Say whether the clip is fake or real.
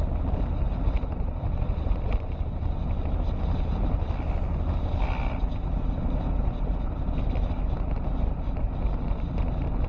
real